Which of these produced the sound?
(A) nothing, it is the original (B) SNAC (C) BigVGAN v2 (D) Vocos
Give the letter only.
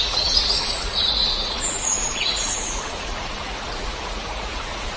D